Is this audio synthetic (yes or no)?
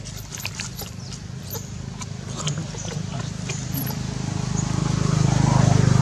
no